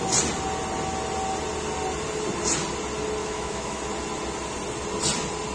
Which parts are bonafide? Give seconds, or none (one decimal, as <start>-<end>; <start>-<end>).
0.0-3.2; 3.8-5.5